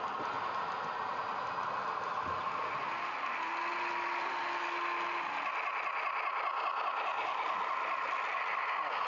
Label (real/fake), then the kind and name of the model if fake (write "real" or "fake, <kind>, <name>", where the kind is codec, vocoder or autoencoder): real